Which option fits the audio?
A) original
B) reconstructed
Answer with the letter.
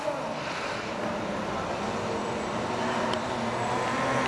A